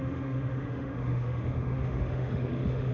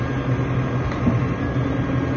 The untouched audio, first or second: second